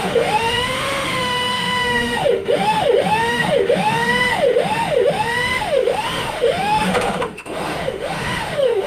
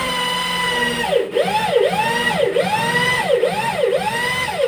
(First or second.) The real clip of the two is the second